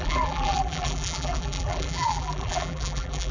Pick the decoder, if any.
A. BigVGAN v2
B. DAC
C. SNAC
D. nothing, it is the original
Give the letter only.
A